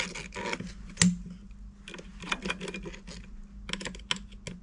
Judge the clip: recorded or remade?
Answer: recorded